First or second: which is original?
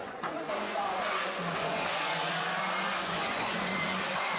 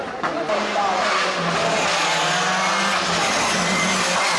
second